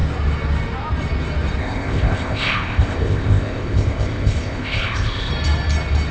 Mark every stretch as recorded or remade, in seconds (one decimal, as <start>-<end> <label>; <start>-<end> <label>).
0.0-1.6 recorded; 1.6-5.3 remade; 5.3-6.1 recorded